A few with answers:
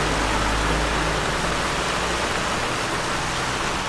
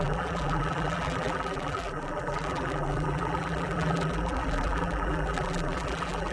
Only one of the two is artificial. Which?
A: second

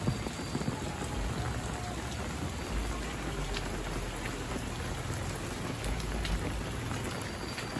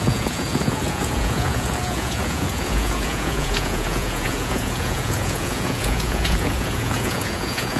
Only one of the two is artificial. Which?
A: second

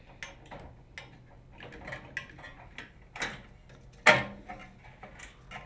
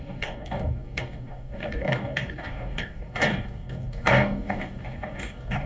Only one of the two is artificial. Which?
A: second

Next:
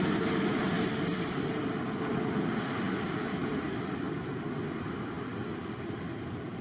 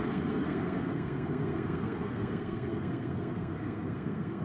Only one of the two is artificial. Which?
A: second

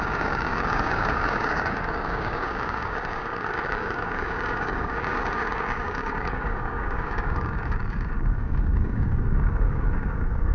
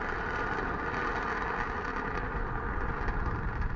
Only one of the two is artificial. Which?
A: first